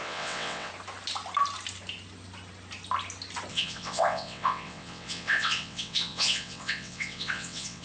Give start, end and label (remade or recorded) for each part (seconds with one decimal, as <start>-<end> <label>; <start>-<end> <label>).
0.0-0.7 remade; 0.7-3.5 recorded; 3.5-7.8 remade